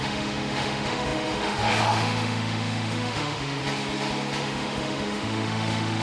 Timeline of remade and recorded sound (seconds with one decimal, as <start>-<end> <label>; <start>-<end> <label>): 0.0-3.6 remade; 3.6-4.4 recorded; 4.4-6.0 remade